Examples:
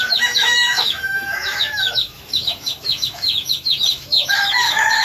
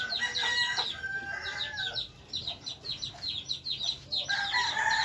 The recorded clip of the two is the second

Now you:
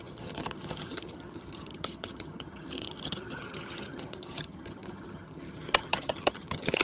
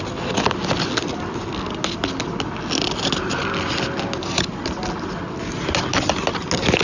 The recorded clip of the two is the second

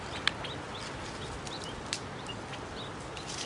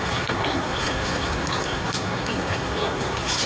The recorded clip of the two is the first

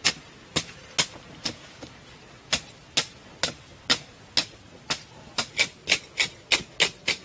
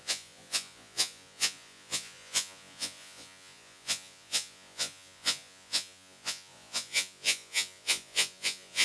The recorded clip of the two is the first